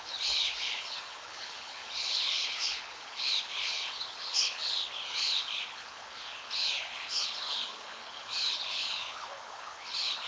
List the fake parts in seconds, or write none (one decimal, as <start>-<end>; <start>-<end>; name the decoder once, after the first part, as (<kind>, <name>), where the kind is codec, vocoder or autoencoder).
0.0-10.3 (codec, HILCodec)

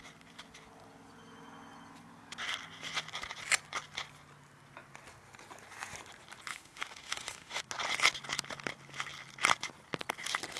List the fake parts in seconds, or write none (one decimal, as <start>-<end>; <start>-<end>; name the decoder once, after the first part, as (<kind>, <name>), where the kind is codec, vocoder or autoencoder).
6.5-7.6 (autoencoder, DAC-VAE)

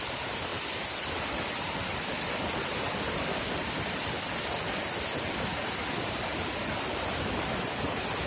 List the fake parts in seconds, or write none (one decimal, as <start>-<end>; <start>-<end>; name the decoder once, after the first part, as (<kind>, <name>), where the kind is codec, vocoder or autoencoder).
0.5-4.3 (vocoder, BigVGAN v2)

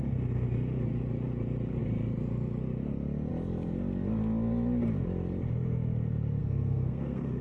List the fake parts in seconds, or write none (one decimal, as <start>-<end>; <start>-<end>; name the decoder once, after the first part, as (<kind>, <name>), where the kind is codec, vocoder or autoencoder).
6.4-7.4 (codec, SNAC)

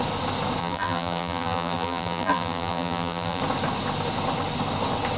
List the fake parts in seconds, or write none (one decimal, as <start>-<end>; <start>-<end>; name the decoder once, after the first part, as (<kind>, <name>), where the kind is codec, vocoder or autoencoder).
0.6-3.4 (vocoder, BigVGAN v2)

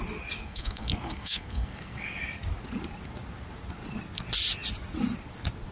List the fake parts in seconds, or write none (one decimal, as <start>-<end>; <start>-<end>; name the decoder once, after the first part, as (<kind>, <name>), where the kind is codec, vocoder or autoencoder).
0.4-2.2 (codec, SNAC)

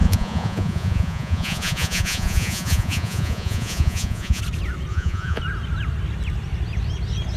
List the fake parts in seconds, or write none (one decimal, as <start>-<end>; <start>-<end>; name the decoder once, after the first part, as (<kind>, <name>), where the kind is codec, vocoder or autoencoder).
0.0-4.4 (vocoder, Vocos); 4.9-5.4